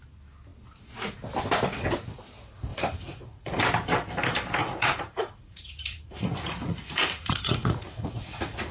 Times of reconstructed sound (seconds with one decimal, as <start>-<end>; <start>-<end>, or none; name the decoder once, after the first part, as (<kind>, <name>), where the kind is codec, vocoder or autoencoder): 2.7-3.6 (vocoder, Vocos); 4.6-8.7